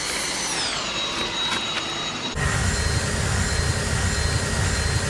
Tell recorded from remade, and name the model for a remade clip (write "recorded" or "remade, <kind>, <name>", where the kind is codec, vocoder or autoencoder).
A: recorded